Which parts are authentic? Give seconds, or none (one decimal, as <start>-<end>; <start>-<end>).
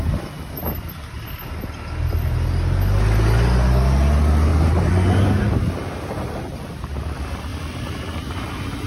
0.0-8.9